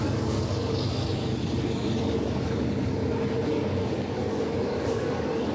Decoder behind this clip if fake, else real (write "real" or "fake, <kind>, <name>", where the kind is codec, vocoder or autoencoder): fake, codec, DAC